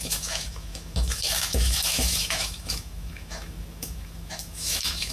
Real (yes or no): no